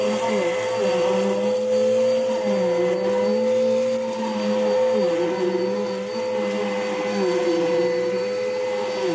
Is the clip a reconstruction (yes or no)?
no